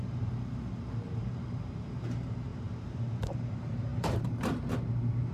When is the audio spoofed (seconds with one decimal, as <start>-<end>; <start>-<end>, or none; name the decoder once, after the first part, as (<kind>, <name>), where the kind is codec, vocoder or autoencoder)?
0.0-5.3 (vocoder, BigVGAN v2)